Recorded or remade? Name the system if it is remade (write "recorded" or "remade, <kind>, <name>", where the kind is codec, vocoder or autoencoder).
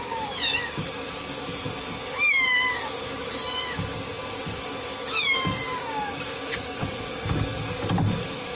remade, codec, DAC